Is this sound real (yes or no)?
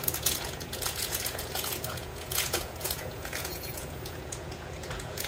no